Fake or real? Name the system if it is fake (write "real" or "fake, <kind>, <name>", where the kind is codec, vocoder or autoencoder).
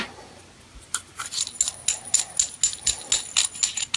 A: real